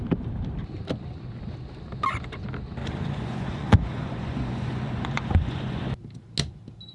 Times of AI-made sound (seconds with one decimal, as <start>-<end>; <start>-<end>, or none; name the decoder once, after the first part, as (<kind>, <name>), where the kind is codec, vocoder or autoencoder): 2.8-5.8 (vocoder, Vocos)